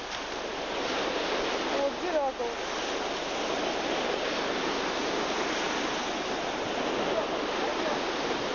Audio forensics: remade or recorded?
recorded